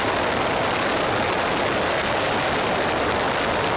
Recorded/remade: recorded